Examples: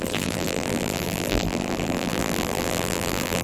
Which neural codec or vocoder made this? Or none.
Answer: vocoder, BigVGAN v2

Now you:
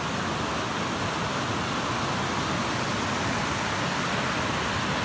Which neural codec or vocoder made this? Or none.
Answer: none